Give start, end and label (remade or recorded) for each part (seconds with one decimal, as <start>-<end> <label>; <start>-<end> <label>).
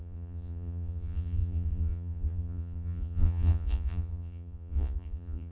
0.0-5.5 remade